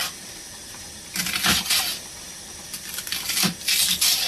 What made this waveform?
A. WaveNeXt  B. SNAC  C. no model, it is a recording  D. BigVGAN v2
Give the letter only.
C